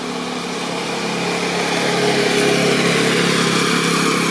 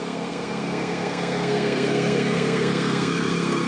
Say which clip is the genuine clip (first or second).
first